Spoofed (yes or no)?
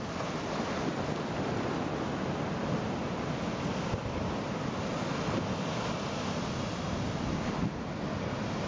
no